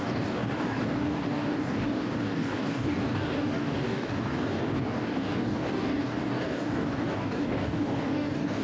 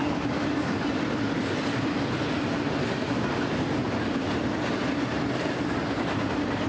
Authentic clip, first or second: second